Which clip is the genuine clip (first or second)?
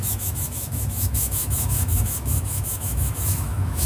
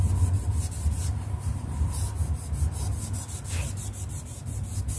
second